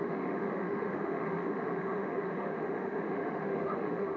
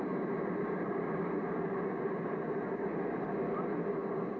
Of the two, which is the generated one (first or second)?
first